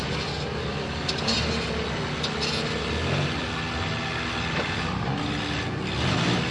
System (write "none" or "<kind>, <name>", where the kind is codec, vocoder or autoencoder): none